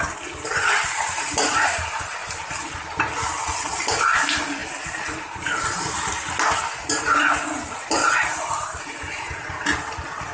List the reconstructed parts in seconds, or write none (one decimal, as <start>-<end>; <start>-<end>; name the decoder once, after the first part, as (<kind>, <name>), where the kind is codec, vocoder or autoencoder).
8.0-9.4 (vocoder, BigVGAN v2)